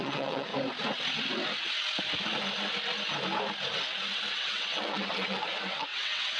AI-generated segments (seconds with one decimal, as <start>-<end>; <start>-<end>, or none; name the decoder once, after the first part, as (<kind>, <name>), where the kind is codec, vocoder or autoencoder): 0.0-0.5 (vocoder, WaveNeXt); 4.3-6.4